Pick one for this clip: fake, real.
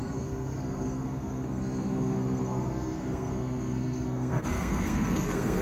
fake